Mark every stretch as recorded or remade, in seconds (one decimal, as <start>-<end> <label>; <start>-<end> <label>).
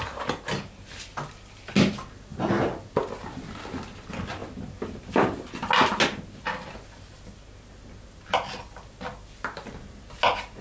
0.0-10.6 recorded